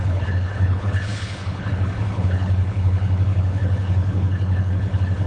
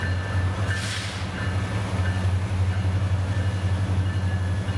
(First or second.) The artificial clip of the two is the first